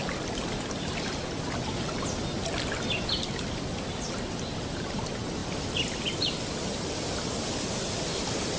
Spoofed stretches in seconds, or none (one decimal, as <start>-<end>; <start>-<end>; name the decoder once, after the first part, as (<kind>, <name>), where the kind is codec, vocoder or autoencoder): 5.4-6.8 (vocoder, BigVGAN v2)